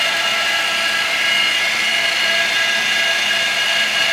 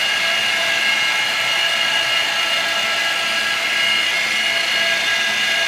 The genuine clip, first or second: second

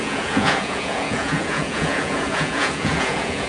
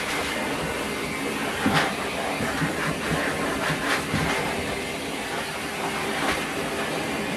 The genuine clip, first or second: second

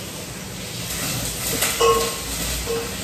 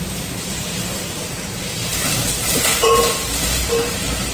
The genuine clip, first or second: first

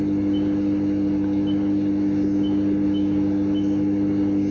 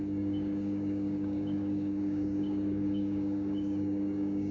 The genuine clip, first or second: first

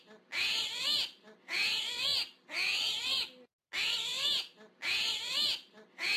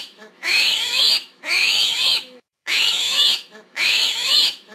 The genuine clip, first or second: first